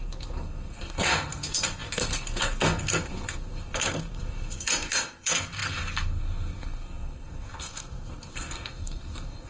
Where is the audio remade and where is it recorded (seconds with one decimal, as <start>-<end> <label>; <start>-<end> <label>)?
0.0-9.5 remade